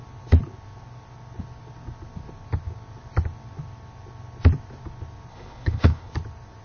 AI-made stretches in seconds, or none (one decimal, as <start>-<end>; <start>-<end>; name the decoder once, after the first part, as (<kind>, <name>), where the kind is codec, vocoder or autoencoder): 5.3-6.1 (codec, HILCodec)